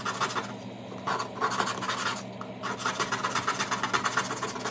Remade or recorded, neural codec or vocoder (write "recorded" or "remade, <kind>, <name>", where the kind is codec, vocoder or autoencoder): recorded